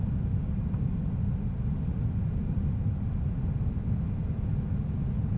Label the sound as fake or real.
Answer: real